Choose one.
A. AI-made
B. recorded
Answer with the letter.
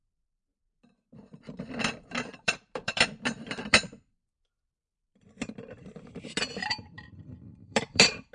A